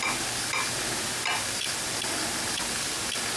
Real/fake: real